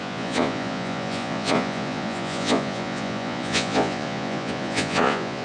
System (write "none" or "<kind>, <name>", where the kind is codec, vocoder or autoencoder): vocoder, Vocos